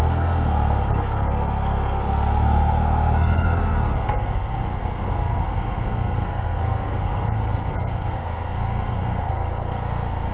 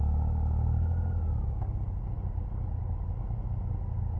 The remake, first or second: first